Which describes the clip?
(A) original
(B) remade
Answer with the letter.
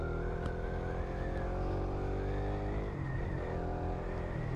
A